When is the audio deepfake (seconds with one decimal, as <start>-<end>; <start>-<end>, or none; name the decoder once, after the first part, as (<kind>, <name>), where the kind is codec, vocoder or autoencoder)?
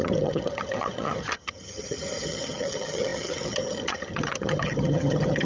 0.0-5.5 (vocoder, HiFi-GAN)